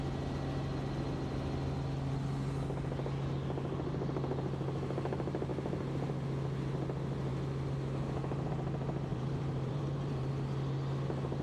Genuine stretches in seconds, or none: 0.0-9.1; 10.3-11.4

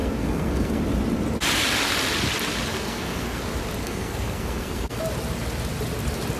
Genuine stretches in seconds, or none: 0.8-2.7; 3.4-3.8; 5.0-6.4

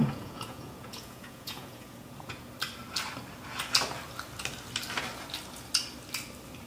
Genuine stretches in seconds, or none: 2.5-6.7

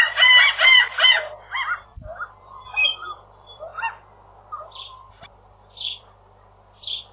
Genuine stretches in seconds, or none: 3.7-5.1

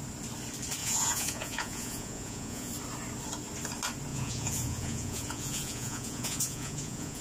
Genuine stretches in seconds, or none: 0.0-0.8; 2.7-4.1

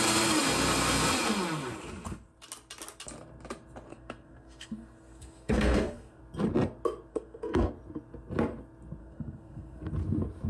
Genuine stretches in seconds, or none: 0.0-3.9; 6.2-7.1; 7.7-9.0; 9.9-10.5

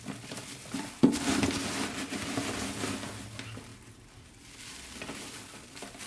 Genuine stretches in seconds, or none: 0.0-6.1

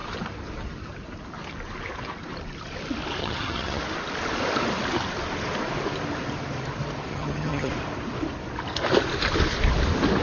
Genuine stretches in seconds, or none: 0.0-3.2; 3.8-7.1; 7.7-10.2